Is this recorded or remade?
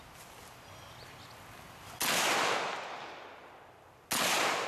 recorded